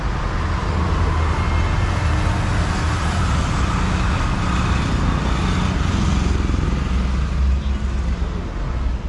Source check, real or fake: real